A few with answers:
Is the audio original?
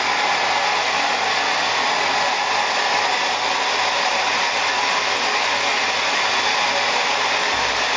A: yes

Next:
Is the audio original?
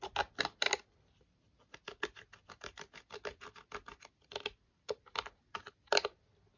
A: yes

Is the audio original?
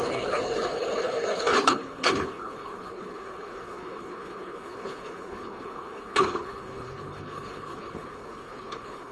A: no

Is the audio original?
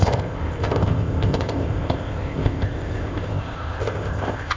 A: no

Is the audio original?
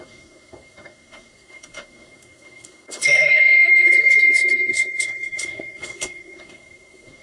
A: no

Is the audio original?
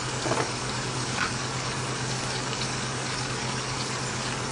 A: no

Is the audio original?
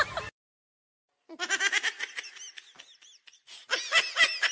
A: yes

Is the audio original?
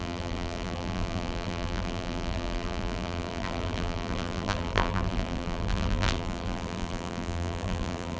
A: no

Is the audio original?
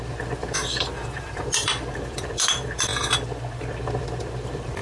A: no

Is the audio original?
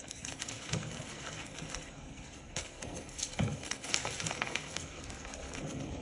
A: no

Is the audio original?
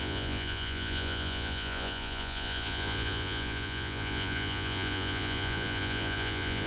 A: no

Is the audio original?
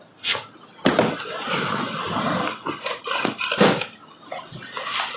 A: yes